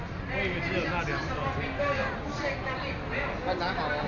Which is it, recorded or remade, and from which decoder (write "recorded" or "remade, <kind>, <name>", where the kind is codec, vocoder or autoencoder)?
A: recorded